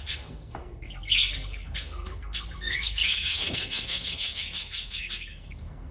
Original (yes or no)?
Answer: no